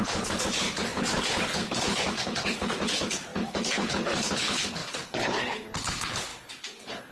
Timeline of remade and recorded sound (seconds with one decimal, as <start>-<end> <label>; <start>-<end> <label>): 0.0-7.1 remade